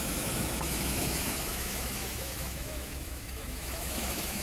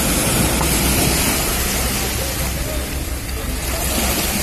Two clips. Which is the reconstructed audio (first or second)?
first